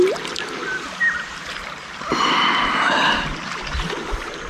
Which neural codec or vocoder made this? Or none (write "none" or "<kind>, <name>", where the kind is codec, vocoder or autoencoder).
none